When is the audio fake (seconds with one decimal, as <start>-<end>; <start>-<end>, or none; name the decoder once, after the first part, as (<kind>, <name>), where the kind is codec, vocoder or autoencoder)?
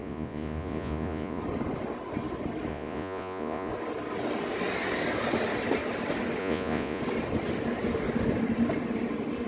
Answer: 0.0-1.4 (vocoder, Vocos); 2.7-3.7; 6.4-7.0